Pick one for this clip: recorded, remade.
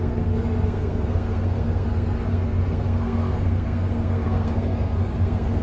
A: remade